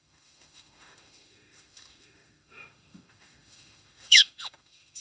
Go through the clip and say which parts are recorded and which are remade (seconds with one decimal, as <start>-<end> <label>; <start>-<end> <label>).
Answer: 0.0-5.0 remade

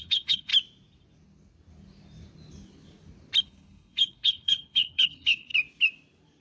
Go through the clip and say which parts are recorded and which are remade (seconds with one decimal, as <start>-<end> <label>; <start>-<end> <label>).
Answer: 0.0-0.5 remade; 0.5-3.4 recorded; 3.4-5.5 remade; 5.5-6.4 recorded

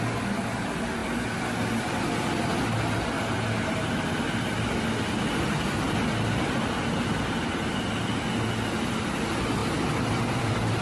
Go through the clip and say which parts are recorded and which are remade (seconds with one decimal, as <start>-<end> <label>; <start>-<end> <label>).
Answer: 0.0-10.8 recorded

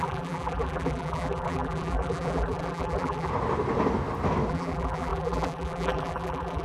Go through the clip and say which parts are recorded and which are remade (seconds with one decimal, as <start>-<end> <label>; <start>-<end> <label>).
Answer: 0.0-3.3 remade; 3.3-4.5 recorded; 4.5-6.6 remade

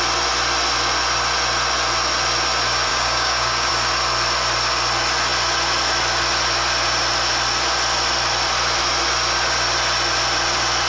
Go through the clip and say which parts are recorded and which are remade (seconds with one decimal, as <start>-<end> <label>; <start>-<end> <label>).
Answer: 0.0-2.9 recorded; 2.9-3.7 remade; 3.7-10.9 recorded

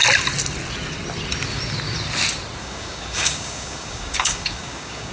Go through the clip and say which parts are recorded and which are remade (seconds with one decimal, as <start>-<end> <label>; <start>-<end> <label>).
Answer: 0.0-2.6 recorded; 2.6-5.1 remade